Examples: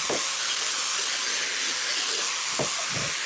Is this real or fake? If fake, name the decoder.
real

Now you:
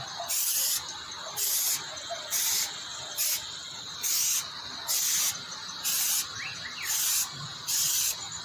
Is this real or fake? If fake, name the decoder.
real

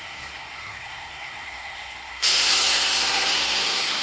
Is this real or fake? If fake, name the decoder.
fake, codec, SNAC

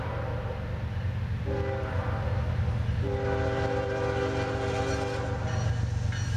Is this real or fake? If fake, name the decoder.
real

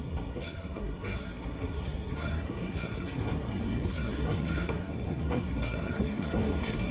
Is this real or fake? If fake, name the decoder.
fake, codec, SNAC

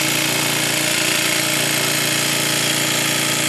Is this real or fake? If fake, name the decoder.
real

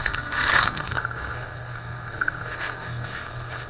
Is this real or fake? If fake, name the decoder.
fake, codec, SNAC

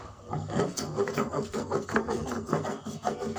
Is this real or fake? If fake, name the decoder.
fake, codec, SNAC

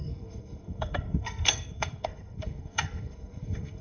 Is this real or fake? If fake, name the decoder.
fake, codec, SNAC